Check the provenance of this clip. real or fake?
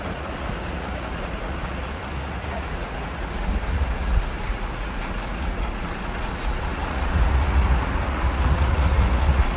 fake